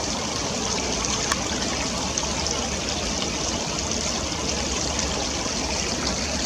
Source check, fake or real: real